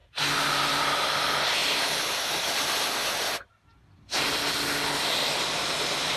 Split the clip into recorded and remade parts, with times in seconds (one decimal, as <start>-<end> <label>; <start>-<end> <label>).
0.0-6.2 recorded